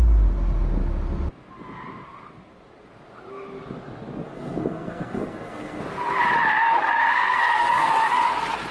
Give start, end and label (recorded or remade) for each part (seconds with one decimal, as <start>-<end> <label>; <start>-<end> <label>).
0.0-4.3 recorded; 4.3-5.8 remade; 5.8-6.9 recorded; 6.9-7.9 remade; 7.9-8.7 recorded